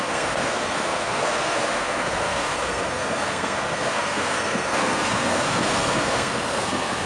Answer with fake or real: fake